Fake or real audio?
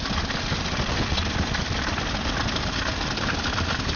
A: real